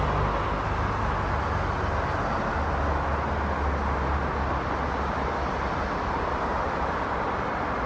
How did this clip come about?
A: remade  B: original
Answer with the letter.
B